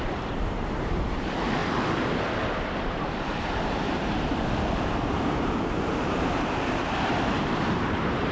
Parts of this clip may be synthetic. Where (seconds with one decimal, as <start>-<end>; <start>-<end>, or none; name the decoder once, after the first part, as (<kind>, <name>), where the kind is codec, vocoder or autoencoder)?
0.0-1.6 (vocoder, BigVGAN v2); 2.8-8.3